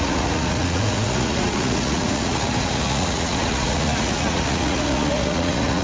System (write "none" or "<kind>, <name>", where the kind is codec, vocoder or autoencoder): vocoder, Vocos